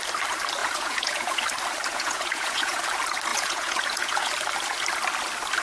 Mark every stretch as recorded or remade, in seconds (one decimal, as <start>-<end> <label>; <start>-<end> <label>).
0.0-0.6 recorded; 0.6-1.4 remade; 1.4-1.9 recorded; 1.9-2.8 remade; 2.8-3.3 recorded; 3.3-4.3 remade; 4.3-5.6 recorded